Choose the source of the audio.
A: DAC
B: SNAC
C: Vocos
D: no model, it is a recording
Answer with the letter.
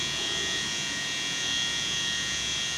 C